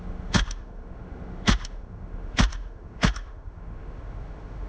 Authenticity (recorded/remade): remade